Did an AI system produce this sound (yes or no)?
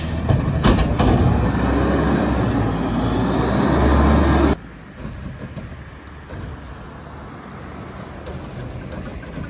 no